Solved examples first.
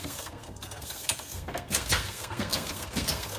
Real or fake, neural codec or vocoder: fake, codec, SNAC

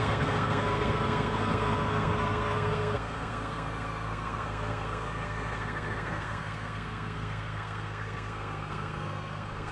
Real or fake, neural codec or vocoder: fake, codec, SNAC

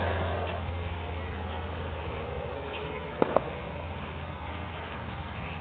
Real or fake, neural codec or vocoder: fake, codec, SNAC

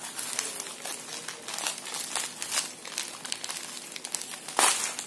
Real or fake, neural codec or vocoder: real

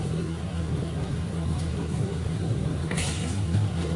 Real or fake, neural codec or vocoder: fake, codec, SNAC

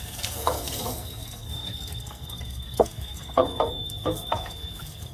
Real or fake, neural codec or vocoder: fake, codec, SNAC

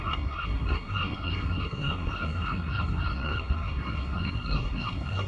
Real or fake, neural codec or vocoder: fake, codec, SNAC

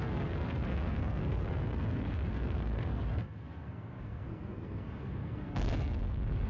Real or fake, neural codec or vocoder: fake, codec, SNAC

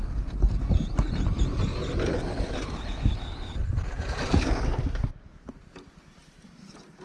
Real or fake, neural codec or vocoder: real